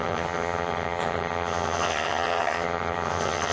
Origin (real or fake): fake